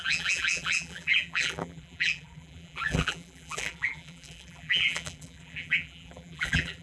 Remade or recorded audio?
remade